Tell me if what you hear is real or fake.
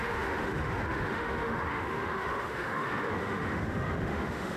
fake